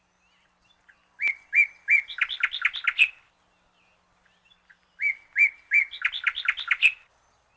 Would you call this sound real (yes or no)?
yes